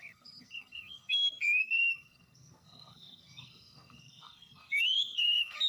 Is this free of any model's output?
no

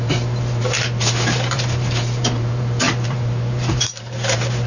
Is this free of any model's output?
no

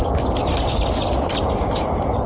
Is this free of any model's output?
yes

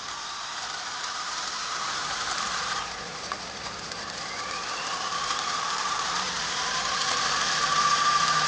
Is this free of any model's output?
no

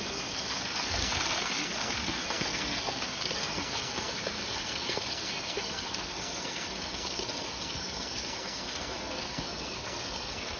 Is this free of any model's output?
no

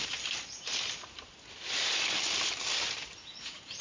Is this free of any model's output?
no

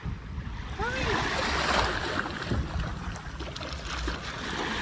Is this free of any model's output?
yes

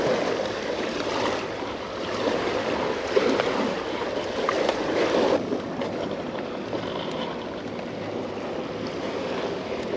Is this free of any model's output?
yes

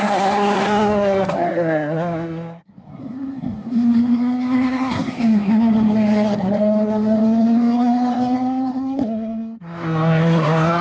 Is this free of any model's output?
no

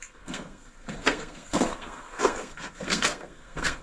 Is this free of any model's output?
no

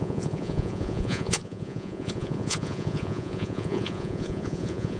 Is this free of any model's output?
no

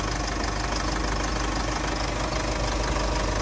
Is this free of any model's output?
yes